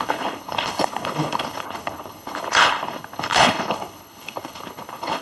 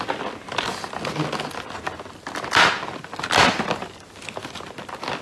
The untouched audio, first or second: second